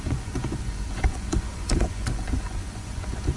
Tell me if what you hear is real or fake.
fake